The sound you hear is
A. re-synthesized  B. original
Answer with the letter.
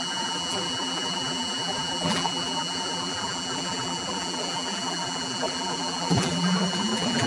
A